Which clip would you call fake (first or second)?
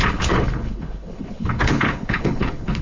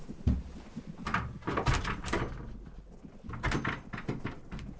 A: first